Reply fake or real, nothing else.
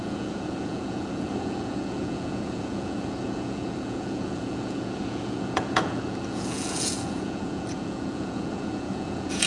fake